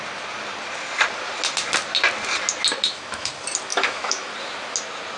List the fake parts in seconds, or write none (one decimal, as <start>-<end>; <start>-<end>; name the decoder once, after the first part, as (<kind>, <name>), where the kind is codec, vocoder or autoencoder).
2.7-3.3 (autoencoder, DAC-VAE); 3.7-4.3